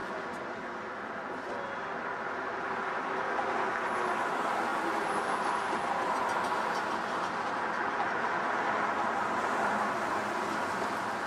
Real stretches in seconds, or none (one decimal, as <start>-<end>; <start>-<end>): 0.0-4.7; 5.3-11.3